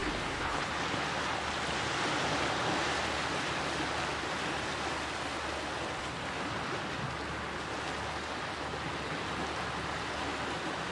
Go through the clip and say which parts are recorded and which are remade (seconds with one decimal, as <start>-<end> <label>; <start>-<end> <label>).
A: 0.0-0.7 remade; 0.7-10.9 recorded